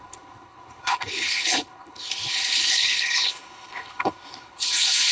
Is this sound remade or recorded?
remade